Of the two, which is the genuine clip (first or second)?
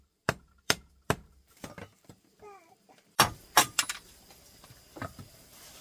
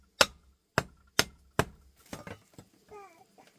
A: second